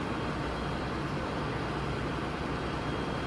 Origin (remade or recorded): recorded